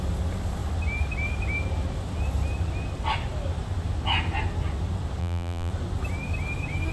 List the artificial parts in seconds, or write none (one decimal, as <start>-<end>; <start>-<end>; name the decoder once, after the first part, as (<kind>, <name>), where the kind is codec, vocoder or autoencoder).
5.2-5.7 (vocoder, BigVGAN v2)